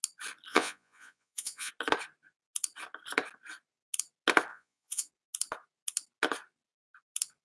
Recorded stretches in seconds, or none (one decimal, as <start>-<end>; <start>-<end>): 0.0-0.5; 1.7-4.5; 5.1-7.4